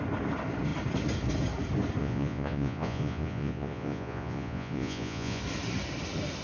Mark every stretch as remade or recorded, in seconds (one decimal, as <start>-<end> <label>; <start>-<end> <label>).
0.0-2.0 recorded; 2.0-5.4 remade; 5.4-6.4 recorded